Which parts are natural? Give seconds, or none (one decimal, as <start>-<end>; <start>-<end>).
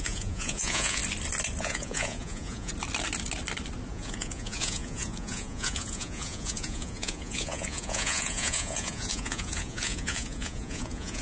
1.0-1.6; 2.7-3.9